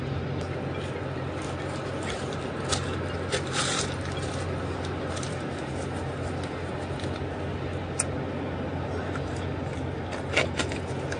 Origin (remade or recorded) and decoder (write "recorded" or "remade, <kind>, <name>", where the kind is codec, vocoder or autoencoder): recorded